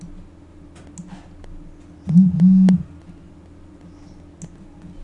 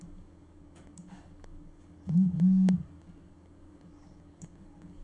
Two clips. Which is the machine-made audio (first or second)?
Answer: second